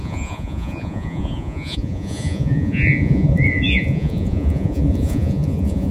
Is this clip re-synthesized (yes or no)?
yes